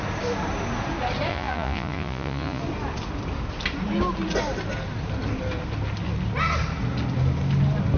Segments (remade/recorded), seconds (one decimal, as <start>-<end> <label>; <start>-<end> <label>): 0.0-1.3 recorded; 1.3-2.6 remade; 2.6-8.0 recorded